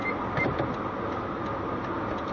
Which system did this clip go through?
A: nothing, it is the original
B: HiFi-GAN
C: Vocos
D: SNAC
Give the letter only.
A